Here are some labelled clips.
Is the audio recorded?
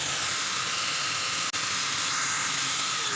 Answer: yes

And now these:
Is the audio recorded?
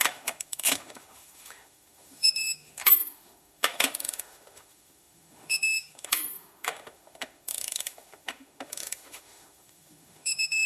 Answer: no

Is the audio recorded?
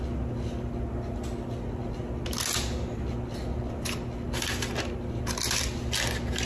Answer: yes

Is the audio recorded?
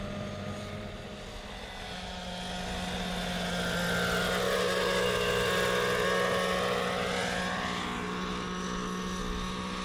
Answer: yes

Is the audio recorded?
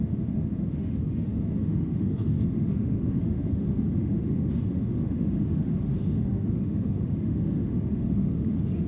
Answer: no